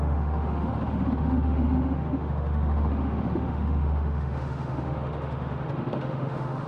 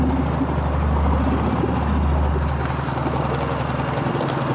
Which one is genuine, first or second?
second